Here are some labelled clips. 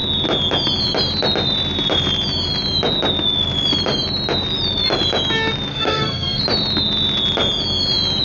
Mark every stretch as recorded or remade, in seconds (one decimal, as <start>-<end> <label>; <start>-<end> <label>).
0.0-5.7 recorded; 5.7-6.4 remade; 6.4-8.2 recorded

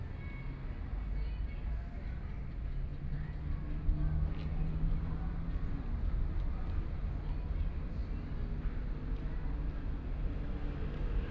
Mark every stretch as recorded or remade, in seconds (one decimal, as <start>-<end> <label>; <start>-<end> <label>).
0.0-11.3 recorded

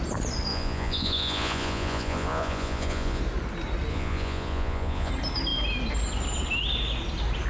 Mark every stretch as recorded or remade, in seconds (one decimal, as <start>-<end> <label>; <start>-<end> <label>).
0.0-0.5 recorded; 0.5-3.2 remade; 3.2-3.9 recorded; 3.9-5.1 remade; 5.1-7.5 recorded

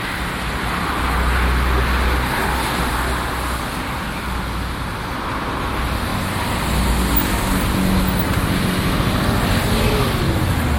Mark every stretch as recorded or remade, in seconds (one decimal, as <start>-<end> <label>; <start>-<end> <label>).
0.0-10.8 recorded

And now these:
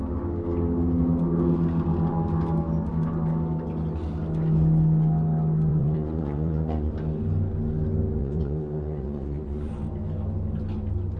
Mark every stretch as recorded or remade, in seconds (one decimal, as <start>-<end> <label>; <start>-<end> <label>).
0.0-5.7 recorded; 5.7-6.9 remade; 6.9-8.2 recorded; 8.2-9.7 remade; 9.7-11.2 recorded

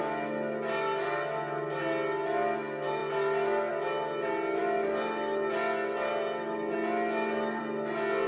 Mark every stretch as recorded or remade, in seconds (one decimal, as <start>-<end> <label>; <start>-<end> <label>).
0.0-8.3 recorded